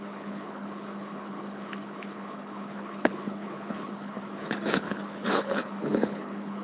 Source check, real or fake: fake